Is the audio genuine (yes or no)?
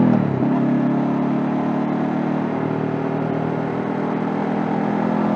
yes